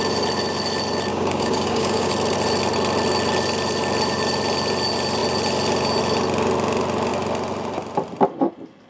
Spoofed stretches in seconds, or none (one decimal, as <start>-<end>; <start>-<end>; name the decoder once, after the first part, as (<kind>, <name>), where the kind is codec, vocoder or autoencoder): 1.1-2.1 (codec, DAC)